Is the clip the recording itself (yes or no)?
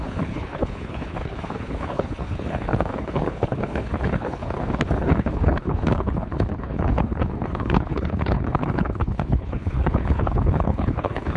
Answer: no